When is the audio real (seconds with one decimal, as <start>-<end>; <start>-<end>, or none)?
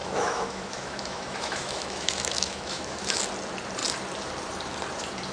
3.2-5.3